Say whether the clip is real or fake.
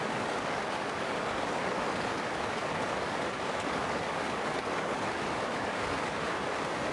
fake